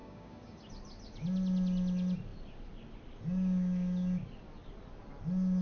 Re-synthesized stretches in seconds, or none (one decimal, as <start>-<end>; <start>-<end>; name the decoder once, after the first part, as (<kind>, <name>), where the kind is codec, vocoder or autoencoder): 0.0-0.6 (codec, DAC)